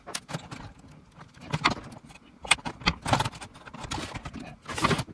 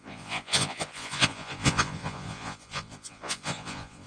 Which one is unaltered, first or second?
first